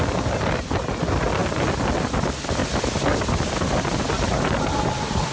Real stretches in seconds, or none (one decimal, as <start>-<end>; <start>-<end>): 0.0-5.3